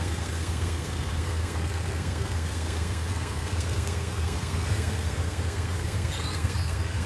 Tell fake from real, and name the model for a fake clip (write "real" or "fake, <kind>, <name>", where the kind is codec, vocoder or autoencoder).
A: fake, codec, SNAC